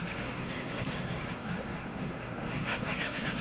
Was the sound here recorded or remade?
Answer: remade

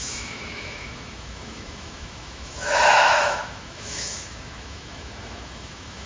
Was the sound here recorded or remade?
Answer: remade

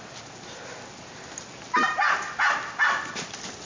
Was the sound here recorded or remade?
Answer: recorded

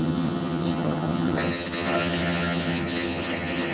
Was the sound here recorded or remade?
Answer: remade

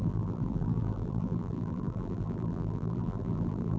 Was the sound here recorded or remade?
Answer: remade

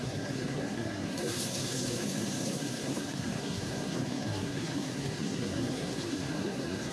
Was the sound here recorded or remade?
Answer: remade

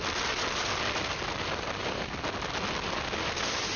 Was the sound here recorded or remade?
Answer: recorded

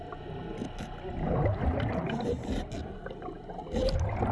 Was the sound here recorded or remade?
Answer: recorded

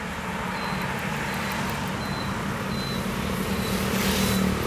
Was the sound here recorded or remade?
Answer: recorded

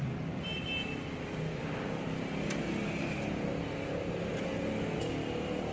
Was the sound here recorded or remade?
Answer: recorded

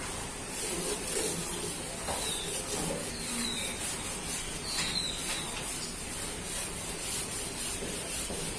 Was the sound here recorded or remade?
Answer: recorded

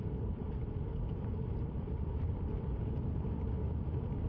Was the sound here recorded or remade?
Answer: recorded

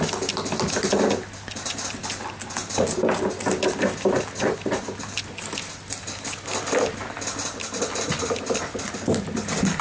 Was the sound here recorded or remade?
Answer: recorded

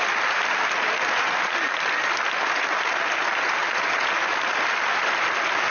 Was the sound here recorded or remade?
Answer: recorded